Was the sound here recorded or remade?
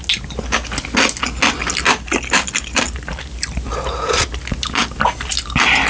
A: recorded